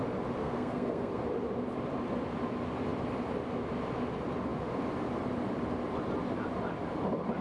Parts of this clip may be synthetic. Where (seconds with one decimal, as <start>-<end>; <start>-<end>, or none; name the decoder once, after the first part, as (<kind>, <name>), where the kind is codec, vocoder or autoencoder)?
0.4-1.2 (codec, SNAC)